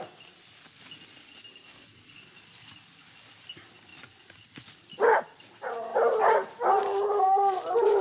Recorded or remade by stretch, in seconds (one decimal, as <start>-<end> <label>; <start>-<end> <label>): 0.0-3.9 recorded; 3.9-5.5 remade; 5.5-5.9 recorded; 5.9-6.8 remade; 6.8-8.0 recorded